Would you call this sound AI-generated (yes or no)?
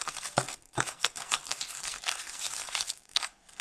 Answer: yes